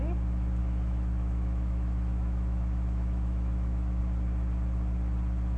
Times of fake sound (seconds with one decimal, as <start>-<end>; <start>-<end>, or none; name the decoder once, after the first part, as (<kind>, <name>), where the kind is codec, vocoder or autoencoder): 0.6-4.0 (autoencoder, DAC-VAE)